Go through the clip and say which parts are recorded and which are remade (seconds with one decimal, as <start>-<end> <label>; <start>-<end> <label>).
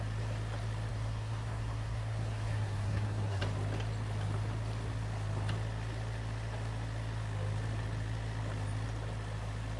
0.0-0.9 recorded; 0.9-3.4 remade; 3.4-9.8 recorded